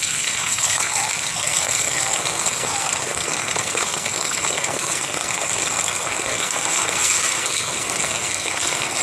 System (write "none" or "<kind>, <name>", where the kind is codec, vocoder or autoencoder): codec, SNAC